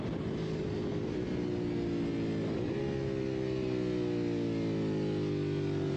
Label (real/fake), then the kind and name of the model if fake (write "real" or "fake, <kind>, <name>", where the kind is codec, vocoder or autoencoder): real